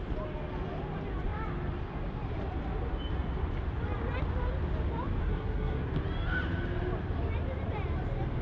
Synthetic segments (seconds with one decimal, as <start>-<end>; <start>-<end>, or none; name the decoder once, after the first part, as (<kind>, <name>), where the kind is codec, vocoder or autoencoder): 5.2-5.9 (codec, SNAC)

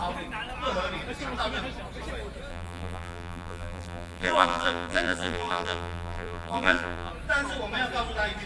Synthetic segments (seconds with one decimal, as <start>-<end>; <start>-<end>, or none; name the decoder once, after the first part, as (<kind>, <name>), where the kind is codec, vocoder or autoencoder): 2.5-7.1 (vocoder, BigVGAN v2)